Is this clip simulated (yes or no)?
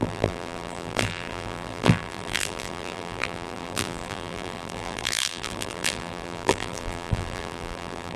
yes